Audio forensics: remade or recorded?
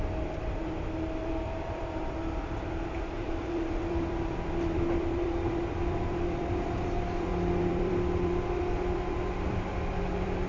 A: remade